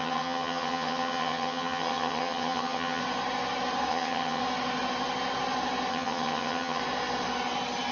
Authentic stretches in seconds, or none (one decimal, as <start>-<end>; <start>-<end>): 3.0-3.9; 4.4-5.9; 6.8-7.9